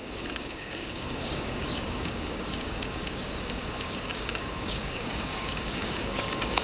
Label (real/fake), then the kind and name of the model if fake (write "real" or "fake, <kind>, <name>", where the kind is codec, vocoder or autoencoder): fake, codec, DAC